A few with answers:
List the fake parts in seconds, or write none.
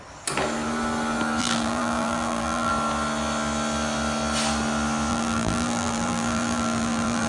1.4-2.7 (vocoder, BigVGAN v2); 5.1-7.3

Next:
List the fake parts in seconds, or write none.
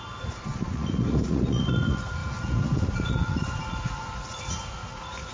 0.0-5.3 (vocoder, Vocos)